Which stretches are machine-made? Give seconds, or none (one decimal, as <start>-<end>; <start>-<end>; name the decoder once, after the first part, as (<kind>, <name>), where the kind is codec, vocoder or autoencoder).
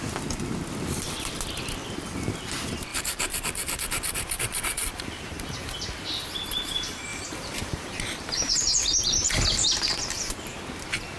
2.9-5.7 (vocoder, BigVGAN v2); 7.1-9.0